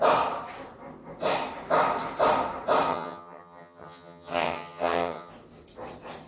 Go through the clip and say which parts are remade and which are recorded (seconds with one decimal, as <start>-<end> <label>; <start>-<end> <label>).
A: 0.0-2.9 recorded; 2.9-5.3 remade; 5.3-6.3 recorded